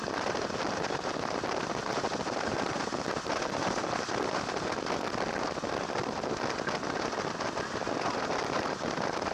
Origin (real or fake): real